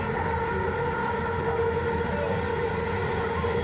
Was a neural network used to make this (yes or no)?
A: no